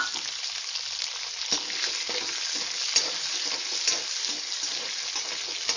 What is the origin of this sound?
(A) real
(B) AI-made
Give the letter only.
A